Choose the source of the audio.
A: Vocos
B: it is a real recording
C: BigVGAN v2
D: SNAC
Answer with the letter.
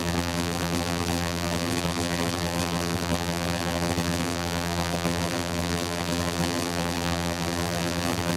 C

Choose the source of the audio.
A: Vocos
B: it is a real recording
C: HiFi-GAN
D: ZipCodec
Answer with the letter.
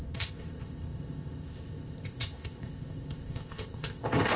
D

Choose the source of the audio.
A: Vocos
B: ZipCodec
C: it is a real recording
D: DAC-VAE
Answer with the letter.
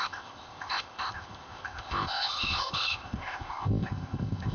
B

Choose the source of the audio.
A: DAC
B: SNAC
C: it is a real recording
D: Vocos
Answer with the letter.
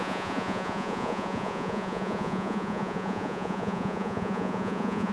D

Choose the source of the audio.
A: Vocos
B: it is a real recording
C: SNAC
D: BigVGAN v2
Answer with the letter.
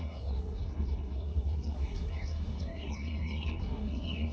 C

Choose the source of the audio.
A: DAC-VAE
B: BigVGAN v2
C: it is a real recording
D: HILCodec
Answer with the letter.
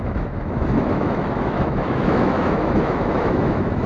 A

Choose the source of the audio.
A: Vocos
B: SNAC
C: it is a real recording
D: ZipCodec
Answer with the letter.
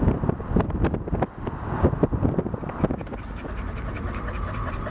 C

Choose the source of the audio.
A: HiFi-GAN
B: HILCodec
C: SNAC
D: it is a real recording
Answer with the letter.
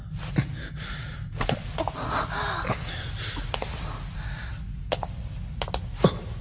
D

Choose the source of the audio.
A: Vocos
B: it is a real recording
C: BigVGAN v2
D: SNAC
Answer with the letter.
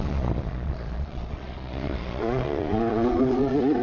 A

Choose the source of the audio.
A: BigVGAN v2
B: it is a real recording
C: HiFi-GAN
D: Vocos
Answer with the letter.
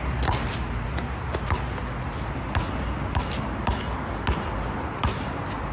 B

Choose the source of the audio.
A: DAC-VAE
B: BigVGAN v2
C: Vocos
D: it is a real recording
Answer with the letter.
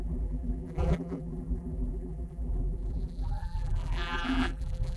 B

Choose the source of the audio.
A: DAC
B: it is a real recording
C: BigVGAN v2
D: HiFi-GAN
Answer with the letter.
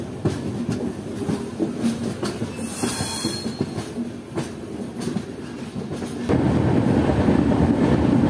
B